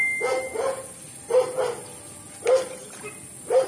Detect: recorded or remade recorded